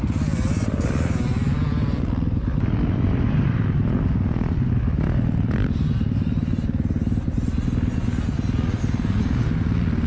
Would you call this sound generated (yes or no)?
no